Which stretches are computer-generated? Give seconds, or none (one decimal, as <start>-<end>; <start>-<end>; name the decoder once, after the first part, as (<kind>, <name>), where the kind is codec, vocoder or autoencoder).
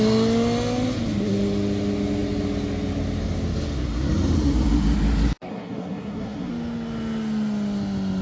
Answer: 5.5-6.5 (codec, SNAC)